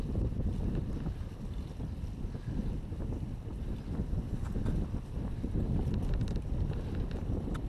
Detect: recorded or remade recorded